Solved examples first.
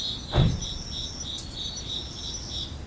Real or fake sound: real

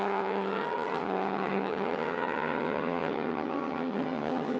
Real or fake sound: fake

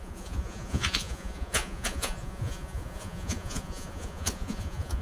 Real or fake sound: fake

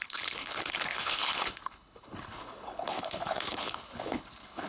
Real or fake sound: fake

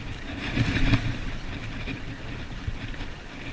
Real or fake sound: real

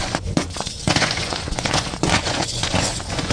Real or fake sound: fake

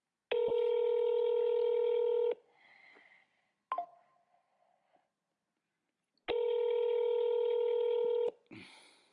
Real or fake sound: real